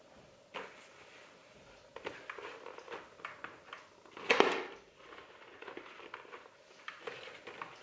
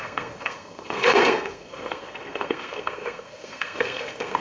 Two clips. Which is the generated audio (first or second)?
second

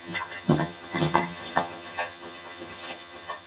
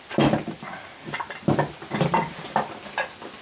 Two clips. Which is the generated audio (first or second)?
first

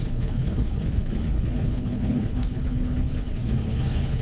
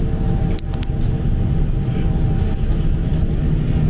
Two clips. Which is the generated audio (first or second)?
first